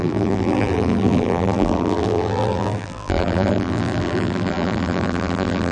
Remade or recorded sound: remade